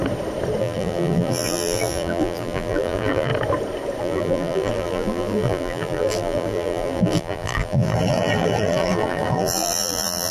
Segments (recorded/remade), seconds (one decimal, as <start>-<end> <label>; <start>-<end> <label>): 0.0-0.6 recorded; 0.6-3.3 remade; 3.3-4.0 recorded; 4.0-10.3 remade